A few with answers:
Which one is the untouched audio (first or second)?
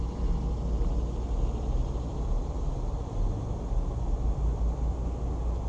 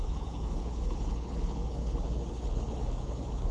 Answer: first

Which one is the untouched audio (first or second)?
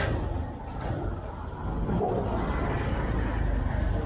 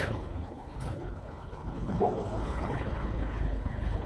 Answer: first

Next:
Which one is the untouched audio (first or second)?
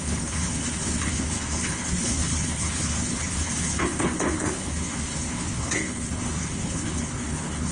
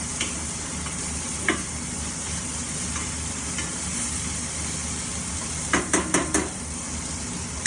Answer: second